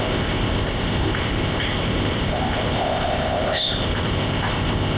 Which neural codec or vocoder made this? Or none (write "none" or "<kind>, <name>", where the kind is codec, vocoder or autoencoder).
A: codec, ZipCodec